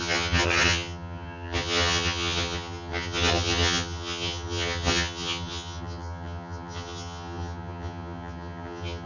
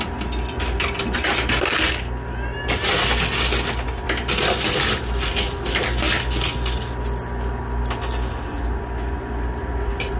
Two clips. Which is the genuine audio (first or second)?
second